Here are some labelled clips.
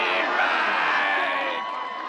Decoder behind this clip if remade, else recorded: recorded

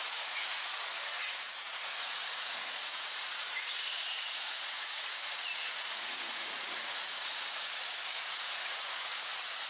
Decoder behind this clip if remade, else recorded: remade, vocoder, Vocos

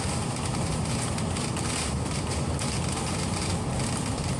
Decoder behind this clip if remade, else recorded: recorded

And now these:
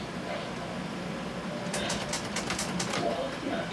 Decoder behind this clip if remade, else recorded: remade, vocoder, BigVGAN v2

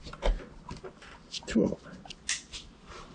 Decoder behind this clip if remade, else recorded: recorded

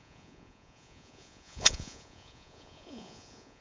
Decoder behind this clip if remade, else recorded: remade, vocoder, Vocos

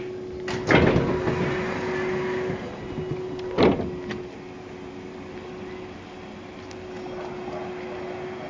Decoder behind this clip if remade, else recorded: recorded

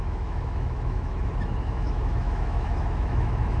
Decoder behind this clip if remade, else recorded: remade, autoencoder, DAC-VAE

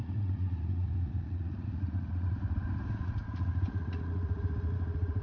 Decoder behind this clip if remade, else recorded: remade, vocoder, Vocos